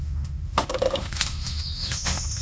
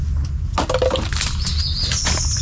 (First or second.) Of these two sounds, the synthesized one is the first